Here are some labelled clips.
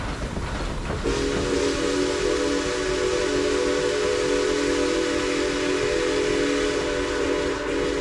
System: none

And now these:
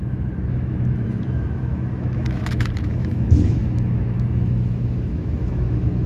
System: autoencoder, DAC-VAE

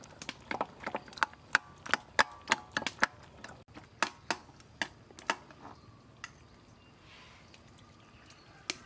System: none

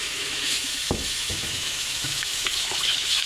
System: autoencoder, DAC-VAE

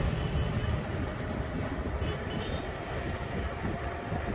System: none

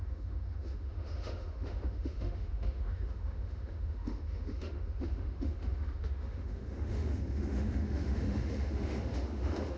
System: autoencoder, DAC-VAE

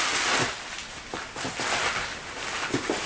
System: none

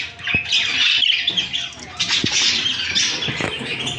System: none